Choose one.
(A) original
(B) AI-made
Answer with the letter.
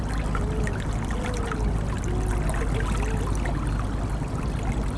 A